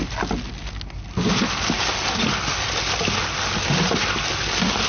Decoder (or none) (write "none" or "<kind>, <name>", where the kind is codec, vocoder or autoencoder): none